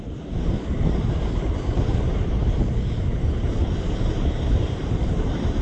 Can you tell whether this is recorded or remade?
remade